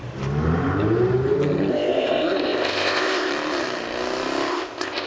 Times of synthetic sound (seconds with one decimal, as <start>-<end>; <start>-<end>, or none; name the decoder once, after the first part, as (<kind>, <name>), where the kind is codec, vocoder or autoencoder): 1.7-3.3 (codec, ZipCodec); 4.5-5.1